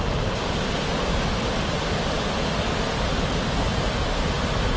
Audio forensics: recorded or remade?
recorded